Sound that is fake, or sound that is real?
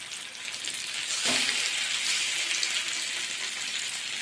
real